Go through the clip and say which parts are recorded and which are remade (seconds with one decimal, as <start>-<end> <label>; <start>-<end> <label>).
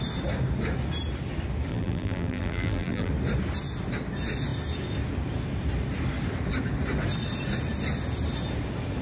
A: 0.0-1.7 recorded; 1.7-3.1 remade; 3.1-9.0 recorded